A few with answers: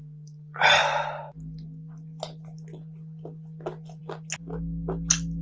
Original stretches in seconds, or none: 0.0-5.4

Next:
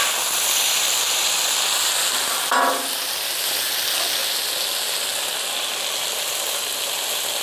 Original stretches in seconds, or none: 0.0-7.4